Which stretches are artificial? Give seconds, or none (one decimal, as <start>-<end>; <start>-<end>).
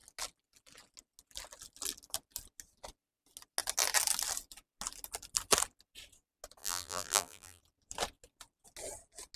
6.6-7.6